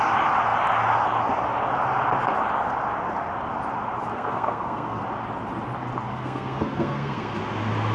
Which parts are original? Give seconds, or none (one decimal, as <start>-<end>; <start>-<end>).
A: 0.0-4.1; 5.0-6.1; 7.4-7.9